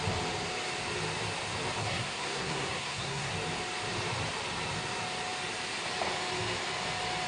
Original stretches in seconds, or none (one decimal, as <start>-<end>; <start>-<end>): 0.0-1.8; 3.3-7.3